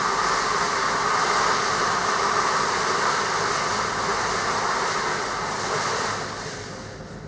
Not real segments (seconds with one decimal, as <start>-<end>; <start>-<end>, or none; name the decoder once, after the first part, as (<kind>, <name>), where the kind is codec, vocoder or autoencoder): none